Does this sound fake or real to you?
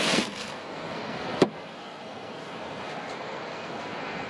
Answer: fake